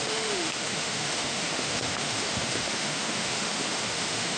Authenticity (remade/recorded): remade